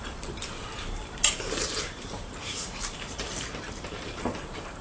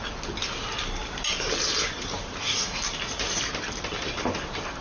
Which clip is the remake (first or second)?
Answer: first